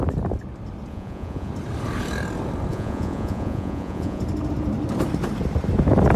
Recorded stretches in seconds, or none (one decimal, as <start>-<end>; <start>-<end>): 0.0-0.9; 1.5-2.7; 4.2-6.2